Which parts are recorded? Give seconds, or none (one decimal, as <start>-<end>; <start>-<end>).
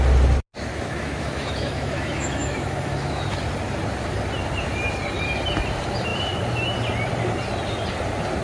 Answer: 0.0-0.7; 3.4-8.4